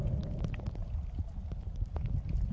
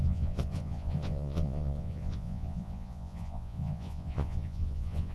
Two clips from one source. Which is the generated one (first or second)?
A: second